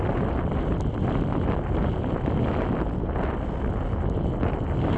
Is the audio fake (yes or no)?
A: no